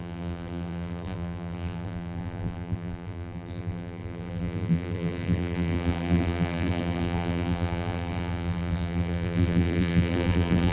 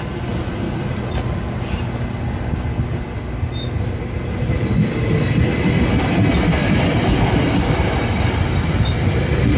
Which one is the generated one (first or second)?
first